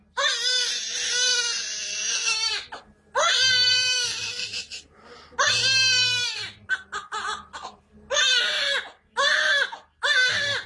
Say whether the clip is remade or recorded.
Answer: recorded